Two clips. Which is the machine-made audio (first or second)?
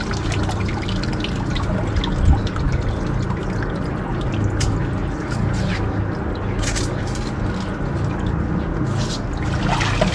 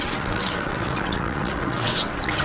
second